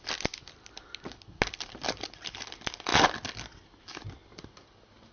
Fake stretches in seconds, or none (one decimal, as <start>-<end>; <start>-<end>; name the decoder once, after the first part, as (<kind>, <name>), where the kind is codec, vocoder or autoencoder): none